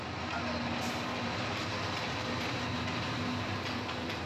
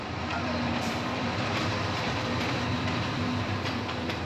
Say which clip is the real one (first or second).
first